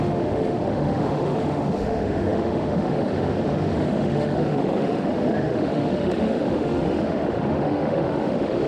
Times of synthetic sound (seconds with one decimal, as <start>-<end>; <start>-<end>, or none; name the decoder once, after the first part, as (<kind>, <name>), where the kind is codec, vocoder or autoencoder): 0.0-8.7 (autoencoder, DAC-VAE)

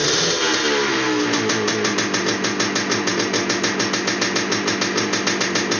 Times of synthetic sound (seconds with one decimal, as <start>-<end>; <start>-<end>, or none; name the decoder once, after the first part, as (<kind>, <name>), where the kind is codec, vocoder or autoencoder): none

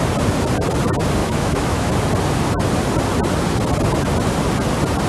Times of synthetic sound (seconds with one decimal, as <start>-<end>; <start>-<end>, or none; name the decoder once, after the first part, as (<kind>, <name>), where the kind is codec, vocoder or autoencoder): 1.2-1.9 (autoencoder, DAC-VAE)

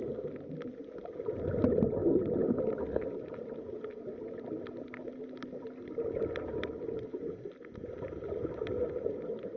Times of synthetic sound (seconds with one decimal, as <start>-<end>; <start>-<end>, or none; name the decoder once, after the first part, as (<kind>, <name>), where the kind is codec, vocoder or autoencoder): none